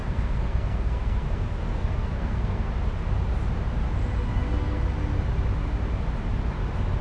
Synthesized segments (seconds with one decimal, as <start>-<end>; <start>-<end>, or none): 0.0-2.7; 4.3-4.8